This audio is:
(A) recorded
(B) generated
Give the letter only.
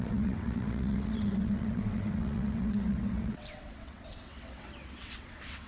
B